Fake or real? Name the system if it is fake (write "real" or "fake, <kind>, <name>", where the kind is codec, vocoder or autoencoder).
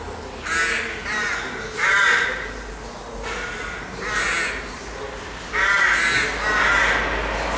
real